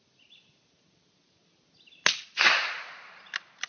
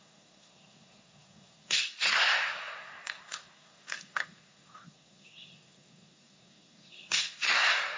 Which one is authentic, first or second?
first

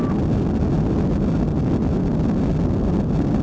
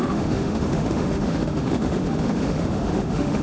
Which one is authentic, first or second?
first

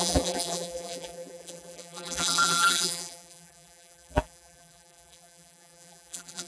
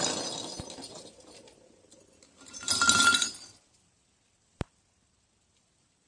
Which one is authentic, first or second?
second